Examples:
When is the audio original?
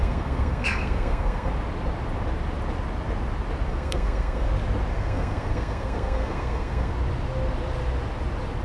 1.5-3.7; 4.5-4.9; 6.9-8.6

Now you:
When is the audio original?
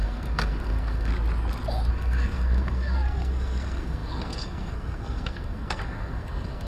1.1-1.9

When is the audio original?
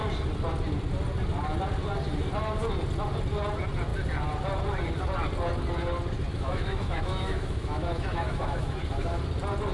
0.0-6.3; 9.2-9.7